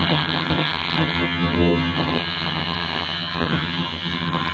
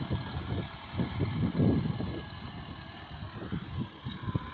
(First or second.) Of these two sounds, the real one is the second